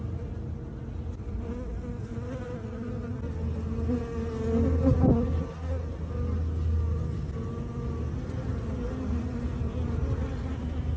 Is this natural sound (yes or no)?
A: yes